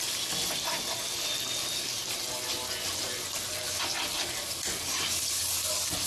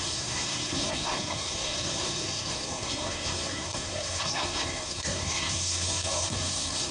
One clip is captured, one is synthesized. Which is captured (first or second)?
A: first